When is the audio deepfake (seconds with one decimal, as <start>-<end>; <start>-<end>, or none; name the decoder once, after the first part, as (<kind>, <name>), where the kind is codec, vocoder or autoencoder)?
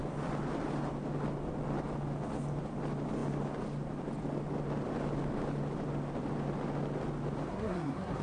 7.5-8.2 (codec, SNAC)